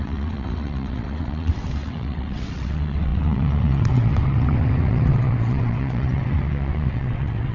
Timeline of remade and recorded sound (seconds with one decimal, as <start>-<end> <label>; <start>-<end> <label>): 0.0-7.5 remade